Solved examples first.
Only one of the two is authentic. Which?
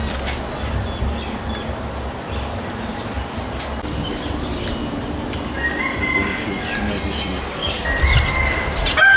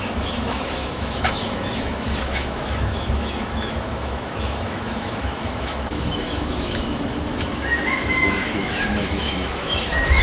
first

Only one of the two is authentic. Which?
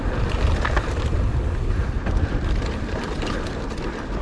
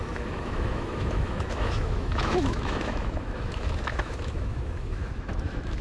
first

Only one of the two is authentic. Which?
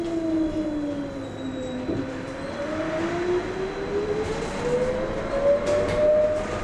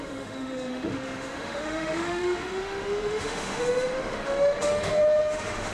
first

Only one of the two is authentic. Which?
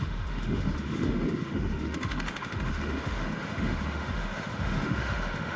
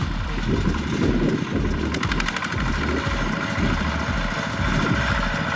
second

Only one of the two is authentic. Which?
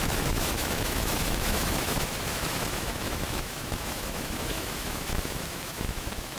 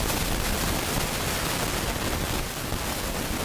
second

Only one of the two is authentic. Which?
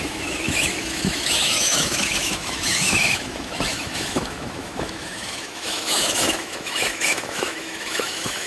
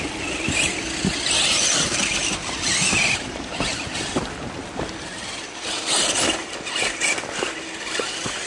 second